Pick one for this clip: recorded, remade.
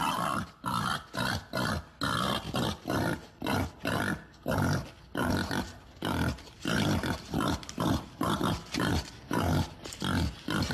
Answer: recorded